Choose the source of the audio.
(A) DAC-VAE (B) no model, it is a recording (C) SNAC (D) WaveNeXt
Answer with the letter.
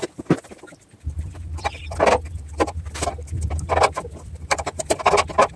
B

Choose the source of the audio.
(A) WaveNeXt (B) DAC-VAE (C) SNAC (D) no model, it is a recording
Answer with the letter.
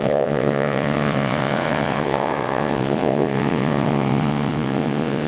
A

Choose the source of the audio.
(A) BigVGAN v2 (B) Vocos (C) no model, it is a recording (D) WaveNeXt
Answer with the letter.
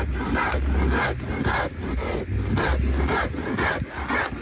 C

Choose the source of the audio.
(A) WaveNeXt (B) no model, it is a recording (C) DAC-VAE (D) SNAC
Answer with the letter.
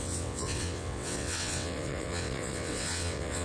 A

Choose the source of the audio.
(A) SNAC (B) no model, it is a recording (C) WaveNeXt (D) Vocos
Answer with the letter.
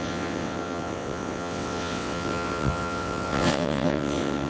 C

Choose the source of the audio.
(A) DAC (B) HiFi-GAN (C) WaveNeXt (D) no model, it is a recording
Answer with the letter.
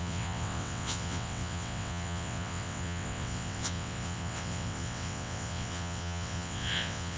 C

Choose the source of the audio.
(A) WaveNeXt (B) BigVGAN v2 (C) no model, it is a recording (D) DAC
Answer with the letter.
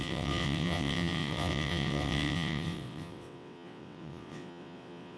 A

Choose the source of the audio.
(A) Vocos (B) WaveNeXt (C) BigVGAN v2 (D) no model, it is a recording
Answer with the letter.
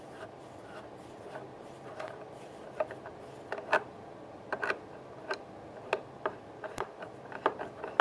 D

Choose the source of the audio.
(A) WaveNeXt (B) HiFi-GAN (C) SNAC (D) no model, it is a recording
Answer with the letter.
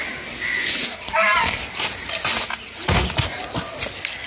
D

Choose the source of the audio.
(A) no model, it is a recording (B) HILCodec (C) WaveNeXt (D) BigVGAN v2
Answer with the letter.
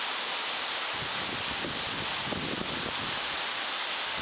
A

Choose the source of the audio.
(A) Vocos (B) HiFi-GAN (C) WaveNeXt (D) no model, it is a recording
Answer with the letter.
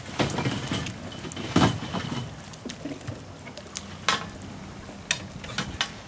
D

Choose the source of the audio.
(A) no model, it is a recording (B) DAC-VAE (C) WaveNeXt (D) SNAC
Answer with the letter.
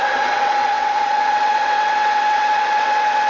C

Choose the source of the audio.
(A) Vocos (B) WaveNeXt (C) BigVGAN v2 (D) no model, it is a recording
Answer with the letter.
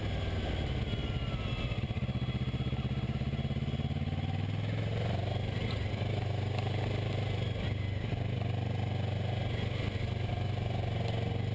D